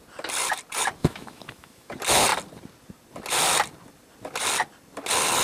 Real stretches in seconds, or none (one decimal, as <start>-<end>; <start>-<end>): 0.0-1.0; 1.9-5.4